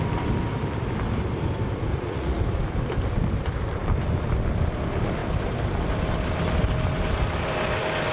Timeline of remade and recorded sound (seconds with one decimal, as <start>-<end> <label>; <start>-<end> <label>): 0.0-1.9 recorded; 1.9-2.4 remade; 2.4-8.1 recorded